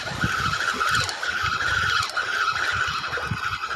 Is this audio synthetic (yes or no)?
no